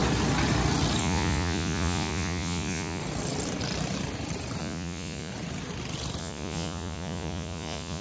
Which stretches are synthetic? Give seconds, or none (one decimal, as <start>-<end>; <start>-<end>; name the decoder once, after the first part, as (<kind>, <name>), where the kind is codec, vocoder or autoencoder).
1.0-3.0 (vocoder, Vocos); 4.6-5.3; 6.2-8.0